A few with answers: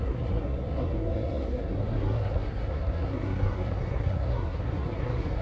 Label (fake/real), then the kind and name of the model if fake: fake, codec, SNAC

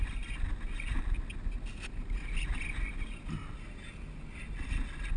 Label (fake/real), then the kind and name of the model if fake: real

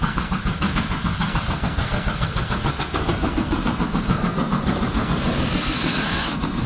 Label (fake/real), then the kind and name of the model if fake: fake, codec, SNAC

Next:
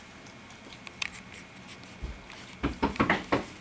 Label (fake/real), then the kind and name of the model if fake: real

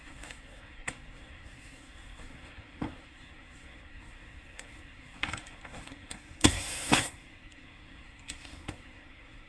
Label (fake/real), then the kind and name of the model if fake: fake, codec, SNAC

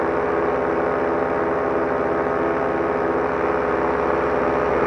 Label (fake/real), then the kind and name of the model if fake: real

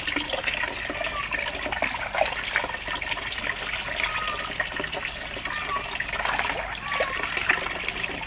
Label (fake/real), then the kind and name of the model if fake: real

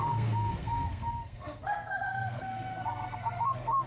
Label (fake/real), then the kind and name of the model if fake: fake, codec, SNAC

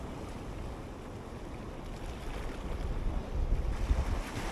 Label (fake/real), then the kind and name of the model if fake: real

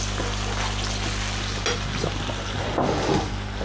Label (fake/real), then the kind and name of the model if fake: real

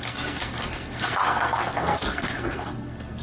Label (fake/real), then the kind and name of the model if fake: fake, codec, SNAC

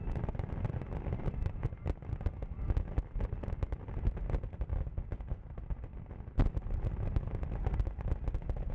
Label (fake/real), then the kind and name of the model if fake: real